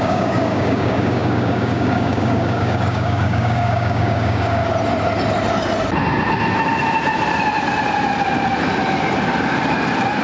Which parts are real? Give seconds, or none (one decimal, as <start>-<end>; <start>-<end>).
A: 4.6-10.2